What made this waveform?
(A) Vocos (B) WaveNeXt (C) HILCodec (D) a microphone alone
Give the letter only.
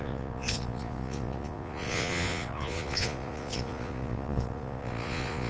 A